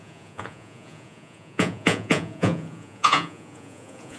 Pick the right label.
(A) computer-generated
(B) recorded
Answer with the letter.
A